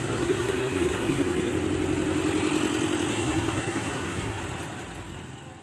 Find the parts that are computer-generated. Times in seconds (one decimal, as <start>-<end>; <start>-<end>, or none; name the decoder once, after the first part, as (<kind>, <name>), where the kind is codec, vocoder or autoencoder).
0.0-1.5 (codec, SNAC); 3.1-4.4